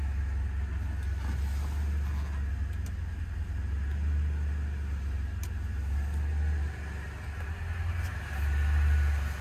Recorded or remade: recorded